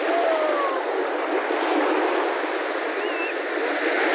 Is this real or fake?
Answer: real